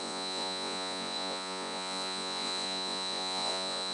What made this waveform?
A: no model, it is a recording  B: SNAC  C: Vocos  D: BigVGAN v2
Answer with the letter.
C